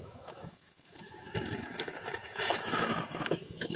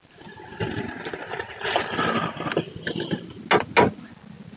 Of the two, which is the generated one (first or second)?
first